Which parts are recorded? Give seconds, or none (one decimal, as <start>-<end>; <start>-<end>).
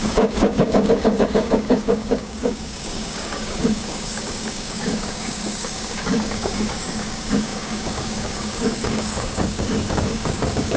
none